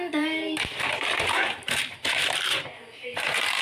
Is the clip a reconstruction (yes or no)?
yes